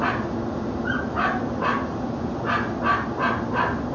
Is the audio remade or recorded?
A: recorded